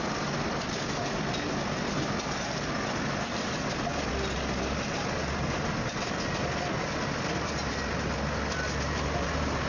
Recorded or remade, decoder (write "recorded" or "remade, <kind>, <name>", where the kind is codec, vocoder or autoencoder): recorded